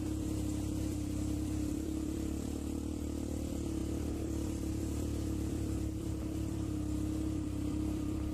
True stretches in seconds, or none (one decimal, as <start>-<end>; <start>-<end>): none